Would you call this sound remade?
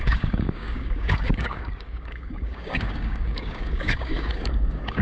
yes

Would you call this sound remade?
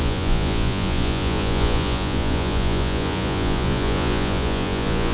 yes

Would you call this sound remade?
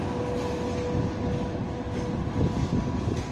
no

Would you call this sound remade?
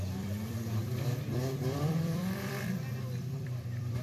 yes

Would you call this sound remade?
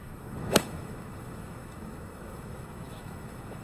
yes